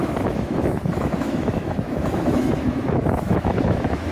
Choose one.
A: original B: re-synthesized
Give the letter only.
B